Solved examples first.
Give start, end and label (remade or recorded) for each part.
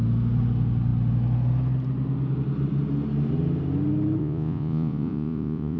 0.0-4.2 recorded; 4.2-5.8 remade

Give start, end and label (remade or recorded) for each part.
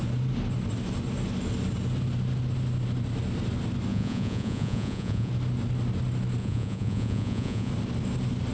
0.0-3.9 recorded; 3.9-5.3 remade; 5.3-6.4 recorded; 6.4-7.7 remade; 7.7-8.5 recorded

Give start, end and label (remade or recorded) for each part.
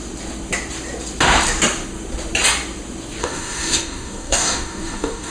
0.0-3.2 recorded; 3.2-5.3 remade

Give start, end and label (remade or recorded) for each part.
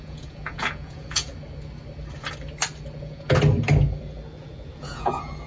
0.0-1.3 remade; 1.3-3.0 recorded; 3.0-3.4 remade; 3.4-4.8 recorded; 4.8-5.5 remade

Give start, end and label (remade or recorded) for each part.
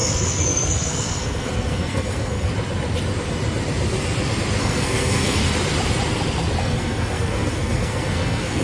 0.0-2.5 remade; 2.5-4.6 recorded; 4.6-5.4 remade; 5.4-6.6 recorded; 6.6-8.6 remade